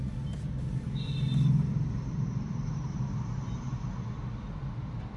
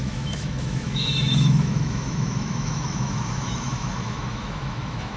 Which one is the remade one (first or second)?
second